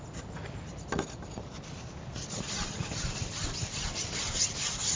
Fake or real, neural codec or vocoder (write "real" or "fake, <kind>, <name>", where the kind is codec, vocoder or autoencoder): real